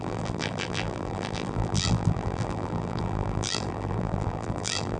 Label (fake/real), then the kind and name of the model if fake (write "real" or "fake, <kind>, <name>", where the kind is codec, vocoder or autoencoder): fake, vocoder, BigVGAN v2